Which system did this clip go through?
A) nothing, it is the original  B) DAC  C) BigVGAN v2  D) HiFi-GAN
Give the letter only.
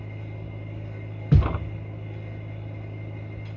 A